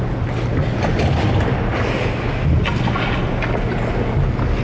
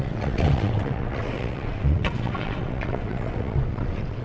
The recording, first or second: first